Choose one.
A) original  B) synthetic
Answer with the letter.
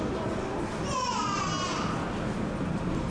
A